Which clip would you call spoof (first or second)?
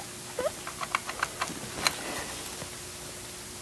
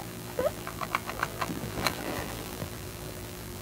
second